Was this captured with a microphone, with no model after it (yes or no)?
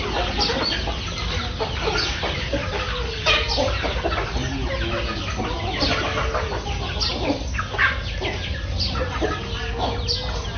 yes